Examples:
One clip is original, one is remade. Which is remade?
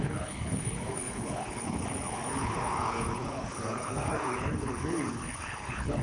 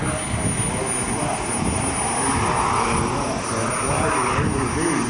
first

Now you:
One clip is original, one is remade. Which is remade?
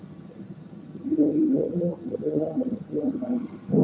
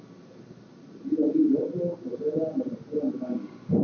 first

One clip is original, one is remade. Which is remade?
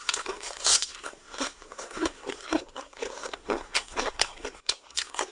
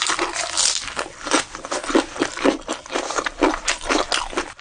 first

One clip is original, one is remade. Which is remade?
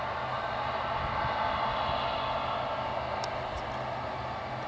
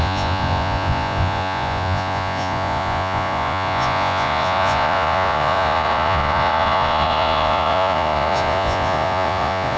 second